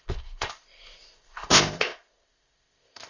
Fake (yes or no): yes